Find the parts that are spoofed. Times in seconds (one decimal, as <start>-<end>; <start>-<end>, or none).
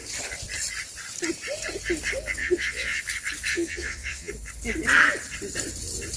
2.4-3.0; 3.5-4.3